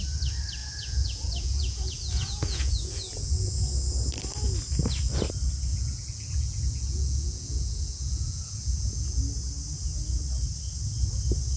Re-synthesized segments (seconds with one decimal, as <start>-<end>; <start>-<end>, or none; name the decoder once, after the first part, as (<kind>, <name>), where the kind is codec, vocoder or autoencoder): 0.6-3.5 (vocoder, Vocos); 5.7-9.2